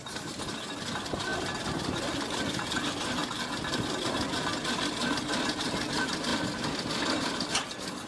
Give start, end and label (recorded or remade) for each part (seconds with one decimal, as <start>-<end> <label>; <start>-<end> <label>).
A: 0.0-1.3 recorded; 1.3-2.4 remade; 2.4-6.3 recorded; 6.3-7.5 remade; 7.5-8.1 recorded